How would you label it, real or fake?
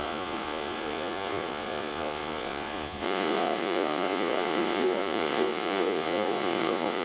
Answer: fake